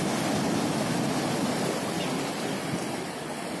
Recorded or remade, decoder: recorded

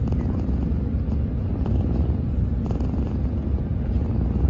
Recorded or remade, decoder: recorded